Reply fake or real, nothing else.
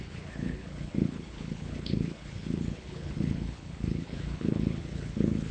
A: fake